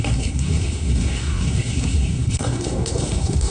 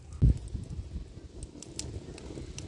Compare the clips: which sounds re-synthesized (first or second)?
first